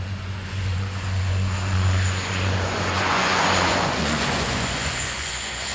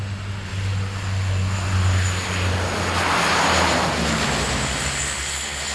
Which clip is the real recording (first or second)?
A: second